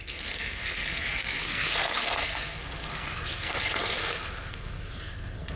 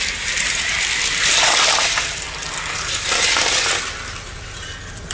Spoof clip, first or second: first